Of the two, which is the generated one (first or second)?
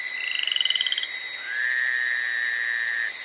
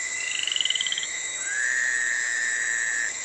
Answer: second